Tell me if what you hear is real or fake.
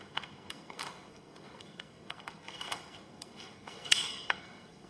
fake